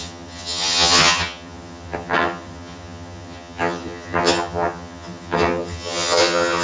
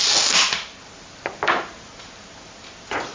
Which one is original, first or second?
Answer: second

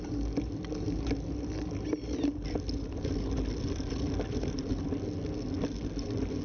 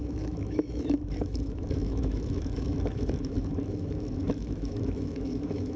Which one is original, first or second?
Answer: first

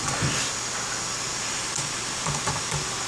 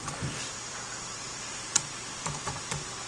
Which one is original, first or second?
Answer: first